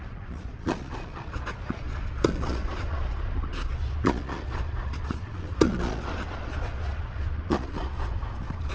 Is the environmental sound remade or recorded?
remade